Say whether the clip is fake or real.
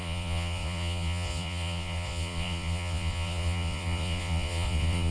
fake